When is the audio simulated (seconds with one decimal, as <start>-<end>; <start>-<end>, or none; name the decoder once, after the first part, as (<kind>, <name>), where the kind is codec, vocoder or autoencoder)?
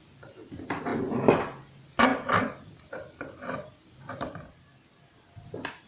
2.1-5.9 (vocoder, BigVGAN v2)